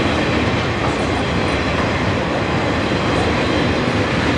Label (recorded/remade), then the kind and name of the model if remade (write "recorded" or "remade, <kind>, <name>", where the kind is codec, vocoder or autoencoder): recorded